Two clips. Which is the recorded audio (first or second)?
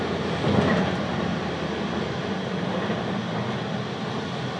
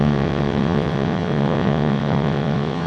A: first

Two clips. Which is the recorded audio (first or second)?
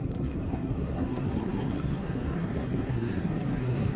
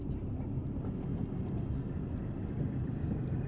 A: second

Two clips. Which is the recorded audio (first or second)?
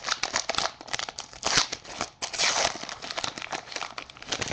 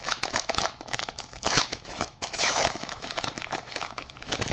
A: first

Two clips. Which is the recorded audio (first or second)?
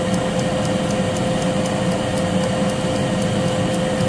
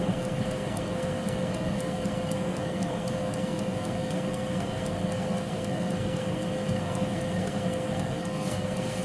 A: first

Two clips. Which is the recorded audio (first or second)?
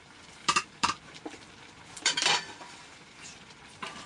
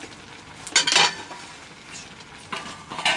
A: second